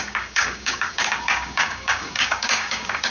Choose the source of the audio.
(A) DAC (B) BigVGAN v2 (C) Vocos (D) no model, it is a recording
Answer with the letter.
A